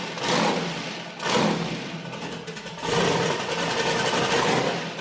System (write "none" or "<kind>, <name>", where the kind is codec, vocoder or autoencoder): none